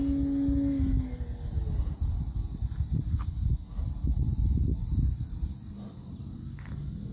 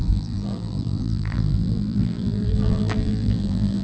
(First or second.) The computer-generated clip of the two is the second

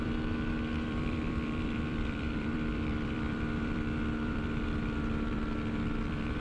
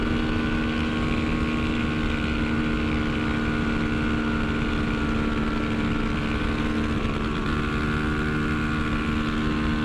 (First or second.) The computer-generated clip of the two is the first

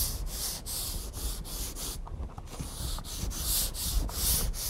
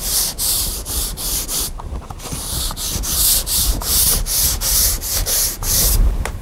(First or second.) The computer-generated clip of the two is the second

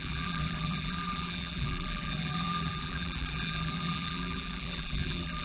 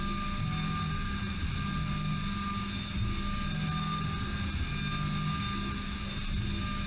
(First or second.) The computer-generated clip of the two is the first